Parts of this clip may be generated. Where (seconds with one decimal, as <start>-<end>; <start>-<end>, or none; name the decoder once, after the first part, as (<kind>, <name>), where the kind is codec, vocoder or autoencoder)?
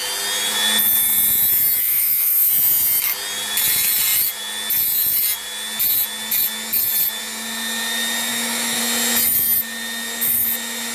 1.8-2.5 (autoencoder, DAC-VAE); 8.3-8.8